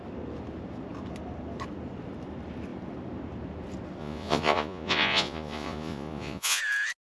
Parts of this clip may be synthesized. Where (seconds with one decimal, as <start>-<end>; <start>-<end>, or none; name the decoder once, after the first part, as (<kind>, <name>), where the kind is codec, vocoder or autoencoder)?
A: 4.0-6.6 (vocoder, Vocos)